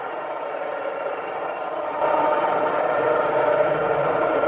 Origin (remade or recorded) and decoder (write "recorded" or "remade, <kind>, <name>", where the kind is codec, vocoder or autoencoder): remade, vocoder, BigVGAN v2